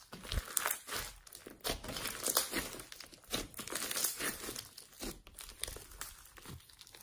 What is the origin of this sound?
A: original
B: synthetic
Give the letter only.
A